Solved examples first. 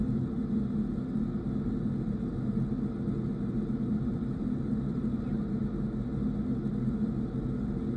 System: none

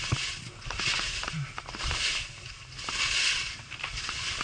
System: none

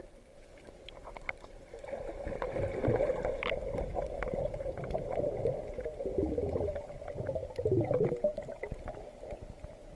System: none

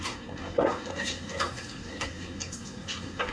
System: codec, SNAC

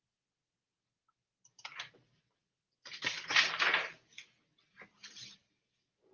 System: none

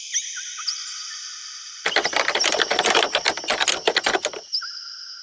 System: none